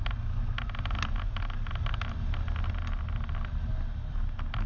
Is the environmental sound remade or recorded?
recorded